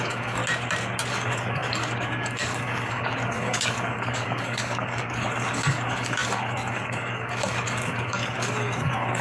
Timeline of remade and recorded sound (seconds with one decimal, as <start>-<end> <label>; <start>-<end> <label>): 0.0-0.4 remade; 0.4-1.1 recorded; 1.1-9.2 remade